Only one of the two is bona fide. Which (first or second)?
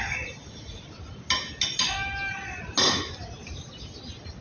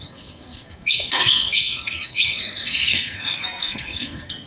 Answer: first